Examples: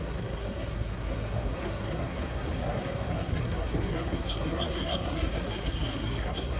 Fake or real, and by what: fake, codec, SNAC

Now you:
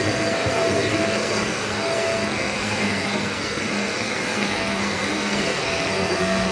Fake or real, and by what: fake, codec, SNAC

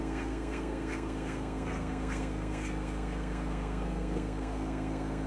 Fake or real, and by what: fake, codec, SNAC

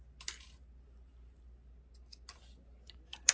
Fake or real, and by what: real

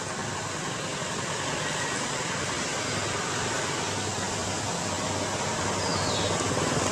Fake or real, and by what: real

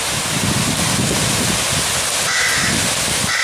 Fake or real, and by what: real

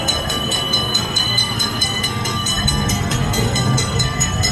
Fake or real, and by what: fake, codec, SNAC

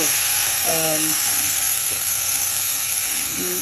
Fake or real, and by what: fake, codec, SNAC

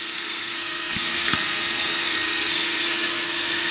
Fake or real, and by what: fake, codec, SNAC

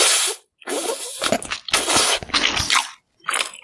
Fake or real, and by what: real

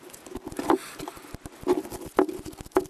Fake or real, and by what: real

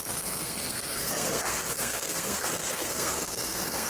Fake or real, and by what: fake, codec, SNAC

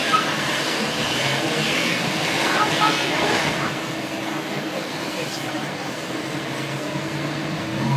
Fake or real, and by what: fake, codec, SNAC